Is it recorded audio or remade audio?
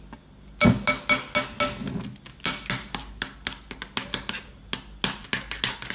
recorded